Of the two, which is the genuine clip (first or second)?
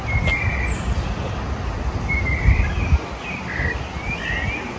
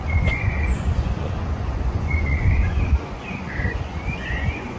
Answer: first